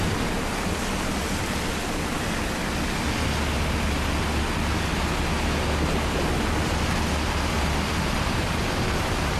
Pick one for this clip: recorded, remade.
recorded